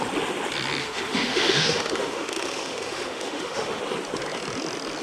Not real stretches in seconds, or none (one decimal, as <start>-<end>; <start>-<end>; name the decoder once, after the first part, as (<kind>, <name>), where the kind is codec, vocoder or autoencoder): 0.8-3.8 (autoencoder, DAC-VAE)